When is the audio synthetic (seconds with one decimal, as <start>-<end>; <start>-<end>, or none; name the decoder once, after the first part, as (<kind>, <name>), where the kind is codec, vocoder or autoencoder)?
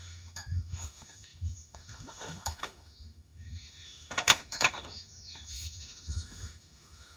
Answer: 0.0-7.2 (autoencoder, DAC-VAE)